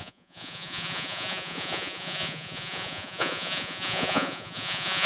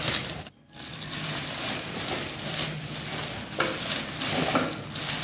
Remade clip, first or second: first